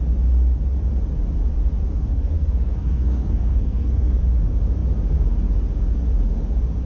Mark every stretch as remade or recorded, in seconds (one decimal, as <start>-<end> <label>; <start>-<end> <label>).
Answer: 0.0-1.9 recorded; 1.9-4.2 remade; 4.2-6.9 recorded

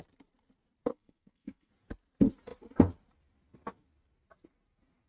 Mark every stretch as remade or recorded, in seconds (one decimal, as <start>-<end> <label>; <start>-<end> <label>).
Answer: 0.0-0.9 recorded; 0.9-1.7 remade; 1.7-5.1 recorded

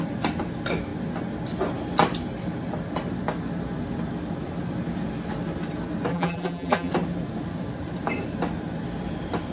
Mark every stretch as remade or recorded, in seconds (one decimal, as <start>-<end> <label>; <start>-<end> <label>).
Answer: 0.0-6.1 recorded; 6.1-6.9 remade; 6.9-9.5 recorded

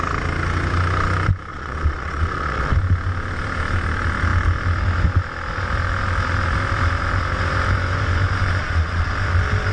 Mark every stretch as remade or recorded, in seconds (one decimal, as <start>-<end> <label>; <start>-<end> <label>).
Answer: 0.0-1.5 recorded; 1.5-2.7 remade; 2.7-8.6 recorded; 8.6-9.1 remade; 9.1-9.7 recorded